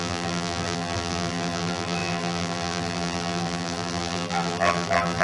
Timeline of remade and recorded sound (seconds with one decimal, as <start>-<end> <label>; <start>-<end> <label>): 0.0-5.2 remade